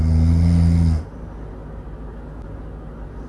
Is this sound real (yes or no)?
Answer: yes